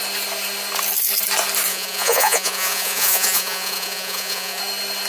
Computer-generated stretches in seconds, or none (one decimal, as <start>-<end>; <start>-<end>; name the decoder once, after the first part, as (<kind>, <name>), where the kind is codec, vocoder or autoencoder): 1.7-4.6 (vocoder, Vocos)